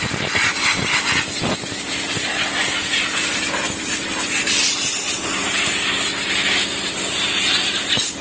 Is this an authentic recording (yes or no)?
yes